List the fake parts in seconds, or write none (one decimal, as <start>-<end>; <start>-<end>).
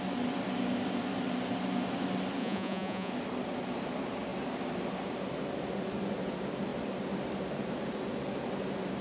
2.4-3.1